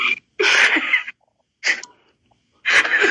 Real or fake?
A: real